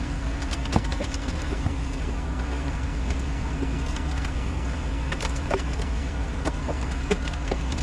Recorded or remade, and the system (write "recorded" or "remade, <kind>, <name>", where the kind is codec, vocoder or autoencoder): remade, codec, SNAC